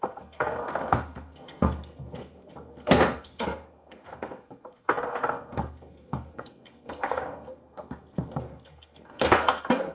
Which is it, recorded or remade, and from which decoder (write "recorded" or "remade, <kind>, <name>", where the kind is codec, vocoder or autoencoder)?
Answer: remade, codec, SNAC